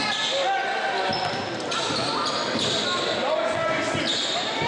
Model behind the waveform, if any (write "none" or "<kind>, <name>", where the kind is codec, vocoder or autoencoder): none